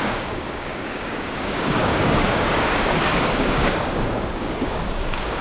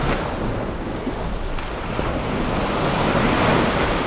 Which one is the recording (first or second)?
second